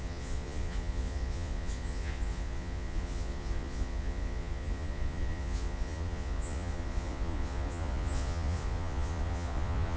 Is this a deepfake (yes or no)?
yes